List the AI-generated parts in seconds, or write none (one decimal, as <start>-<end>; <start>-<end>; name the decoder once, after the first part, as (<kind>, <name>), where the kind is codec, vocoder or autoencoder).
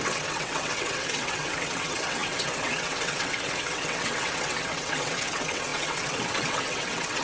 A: 0.0-7.2 (vocoder, WaveNeXt)